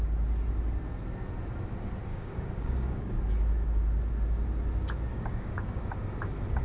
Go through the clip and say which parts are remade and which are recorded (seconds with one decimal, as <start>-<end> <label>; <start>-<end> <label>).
0.0-2.1 recorded; 2.1-3.2 remade; 3.2-5.1 recorded; 5.1-5.8 remade; 5.8-6.6 recorded